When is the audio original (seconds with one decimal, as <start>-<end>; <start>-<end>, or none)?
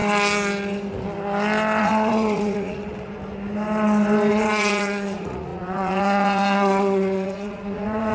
0.0-1.8; 2.8-4.3